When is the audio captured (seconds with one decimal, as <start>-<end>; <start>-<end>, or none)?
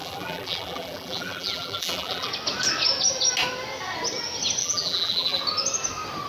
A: 2.3-4.6; 5.4-6.3